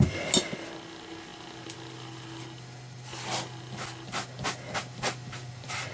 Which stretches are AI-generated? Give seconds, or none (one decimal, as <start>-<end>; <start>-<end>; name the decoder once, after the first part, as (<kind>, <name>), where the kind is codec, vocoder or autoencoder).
none